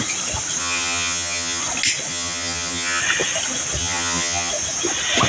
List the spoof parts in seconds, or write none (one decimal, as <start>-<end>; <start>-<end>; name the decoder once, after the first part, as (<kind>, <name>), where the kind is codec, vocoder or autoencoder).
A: 0.6-1.6 (vocoder, HiFi-GAN); 2.1-3.0; 3.8-4.5